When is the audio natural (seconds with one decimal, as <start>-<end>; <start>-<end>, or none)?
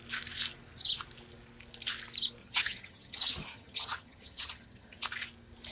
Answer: 0.0-2.4; 5.0-5.7